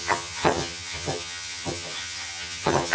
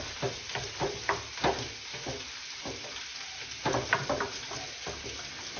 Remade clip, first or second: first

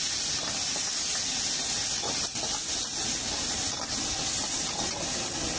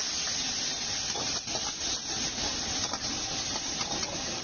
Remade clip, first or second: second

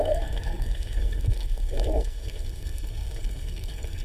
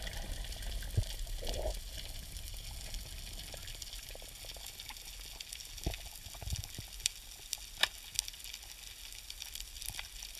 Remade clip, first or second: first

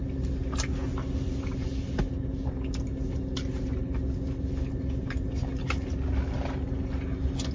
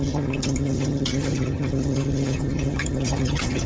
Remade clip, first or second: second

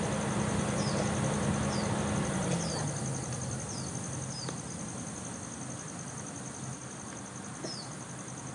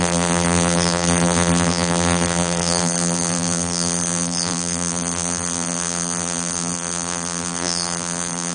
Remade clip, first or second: second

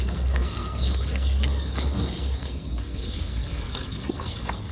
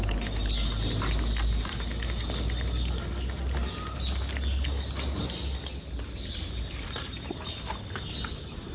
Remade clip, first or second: first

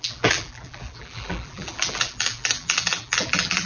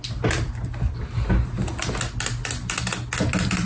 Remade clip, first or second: first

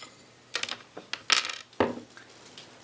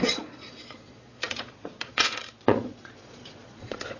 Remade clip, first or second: second